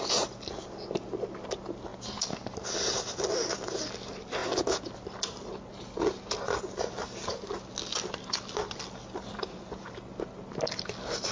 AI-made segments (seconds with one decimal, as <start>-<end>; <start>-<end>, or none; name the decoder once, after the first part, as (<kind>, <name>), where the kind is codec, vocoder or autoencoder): none